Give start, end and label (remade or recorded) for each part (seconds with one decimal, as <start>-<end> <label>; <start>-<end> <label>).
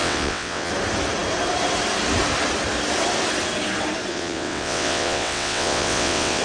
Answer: 0.0-0.7 remade; 0.7-4.1 recorded; 4.1-6.4 remade